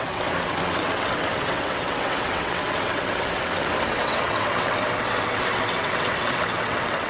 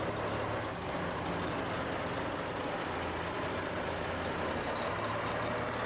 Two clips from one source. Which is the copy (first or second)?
first